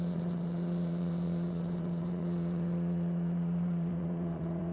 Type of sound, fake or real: fake